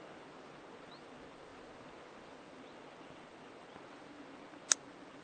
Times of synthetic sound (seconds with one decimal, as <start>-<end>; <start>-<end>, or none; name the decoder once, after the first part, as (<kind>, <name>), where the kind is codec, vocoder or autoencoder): none